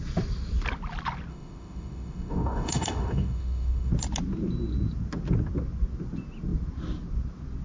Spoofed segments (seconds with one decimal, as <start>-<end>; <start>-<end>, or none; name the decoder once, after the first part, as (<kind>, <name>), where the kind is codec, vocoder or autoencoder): 1.3-3.9 (autoencoder, DAC-VAE)